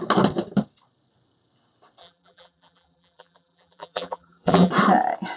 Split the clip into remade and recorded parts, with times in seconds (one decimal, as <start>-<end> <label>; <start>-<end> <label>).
0.0-2.0 recorded; 2.0-4.7 remade; 4.7-5.4 recorded